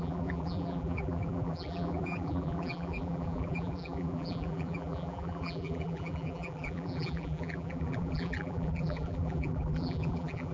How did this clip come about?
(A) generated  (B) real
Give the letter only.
A